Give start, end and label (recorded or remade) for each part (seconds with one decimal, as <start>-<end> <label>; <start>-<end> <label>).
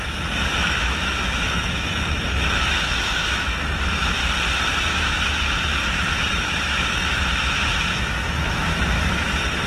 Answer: 0.0-4.2 remade; 4.2-4.8 recorded; 4.8-9.7 remade